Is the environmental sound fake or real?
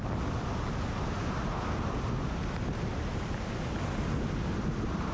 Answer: real